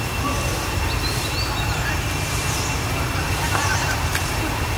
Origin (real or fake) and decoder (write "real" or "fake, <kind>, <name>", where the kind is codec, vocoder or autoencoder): real